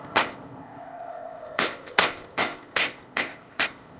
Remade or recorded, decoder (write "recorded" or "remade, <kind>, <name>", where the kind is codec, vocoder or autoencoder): remade, codec, ZipCodec